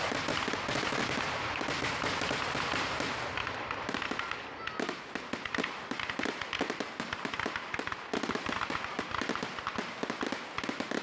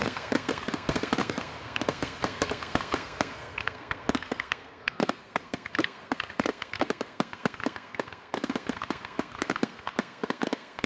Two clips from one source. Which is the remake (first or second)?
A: second